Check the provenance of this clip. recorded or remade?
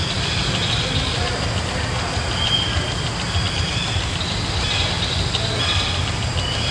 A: recorded